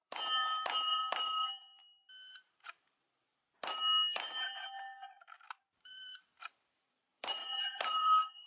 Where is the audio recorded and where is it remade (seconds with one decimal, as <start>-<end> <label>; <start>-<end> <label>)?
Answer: 0.0-1.0 remade; 1.0-5.7 recorded; 5.7-8.5 remade